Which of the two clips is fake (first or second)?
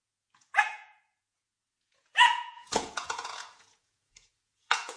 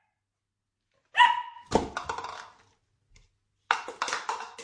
first